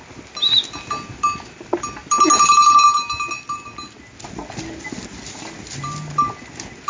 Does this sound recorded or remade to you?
recorded